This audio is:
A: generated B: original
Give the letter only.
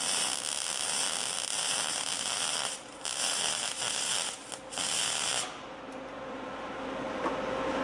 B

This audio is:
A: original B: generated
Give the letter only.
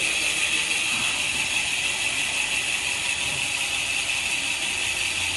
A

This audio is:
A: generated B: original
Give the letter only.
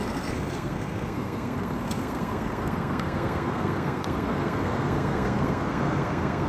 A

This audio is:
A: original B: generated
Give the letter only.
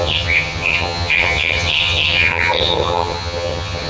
B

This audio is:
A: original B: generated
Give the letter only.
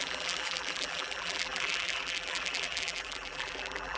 B